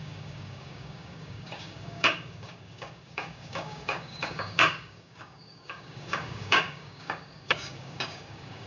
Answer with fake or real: fake